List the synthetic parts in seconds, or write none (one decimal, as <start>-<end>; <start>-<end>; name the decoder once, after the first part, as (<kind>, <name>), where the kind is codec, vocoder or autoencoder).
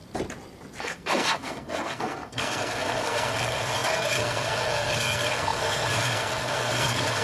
0.8-7.2 (codec, SNAC)